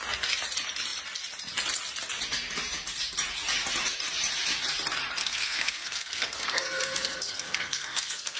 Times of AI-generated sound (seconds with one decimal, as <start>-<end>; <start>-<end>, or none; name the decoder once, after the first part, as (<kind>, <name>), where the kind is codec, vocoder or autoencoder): 5.2-8.4 (codec, SNAC)